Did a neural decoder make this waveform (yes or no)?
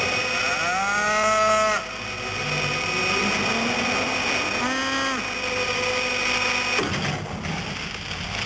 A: no